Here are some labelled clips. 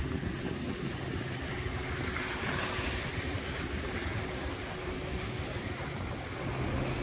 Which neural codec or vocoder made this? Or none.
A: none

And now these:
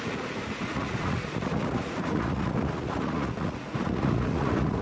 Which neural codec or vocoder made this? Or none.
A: vocoder, Vocos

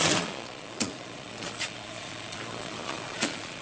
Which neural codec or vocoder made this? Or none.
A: vocoder, Vocos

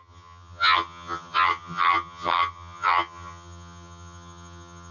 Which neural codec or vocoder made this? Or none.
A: vocoder, HiFi-GAN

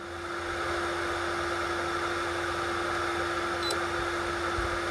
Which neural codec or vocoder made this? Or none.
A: none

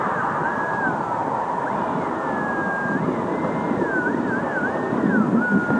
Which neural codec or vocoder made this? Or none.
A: none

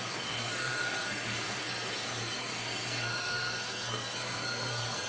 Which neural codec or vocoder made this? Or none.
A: codec, SNAC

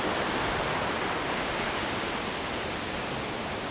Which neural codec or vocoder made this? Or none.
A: none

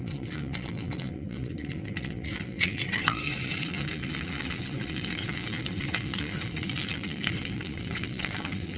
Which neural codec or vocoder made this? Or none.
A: vocoder, WaveNeXt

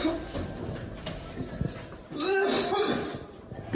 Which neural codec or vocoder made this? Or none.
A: none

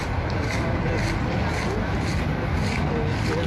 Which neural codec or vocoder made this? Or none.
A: none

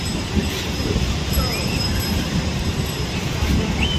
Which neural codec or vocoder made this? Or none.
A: none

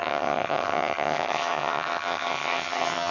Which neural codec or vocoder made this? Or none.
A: vocoder, HiFi-GAN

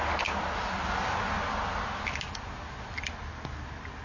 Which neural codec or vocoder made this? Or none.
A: none